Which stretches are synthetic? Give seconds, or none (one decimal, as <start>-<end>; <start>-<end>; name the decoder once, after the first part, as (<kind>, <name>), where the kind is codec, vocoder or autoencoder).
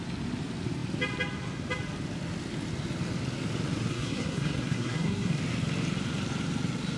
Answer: 3.9-5.4 (codec, SNAC)